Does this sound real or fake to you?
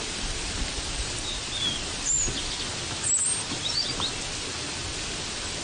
real